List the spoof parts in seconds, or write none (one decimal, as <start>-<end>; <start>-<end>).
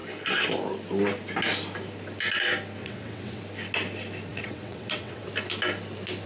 2.8-3.4; 4.3-5.3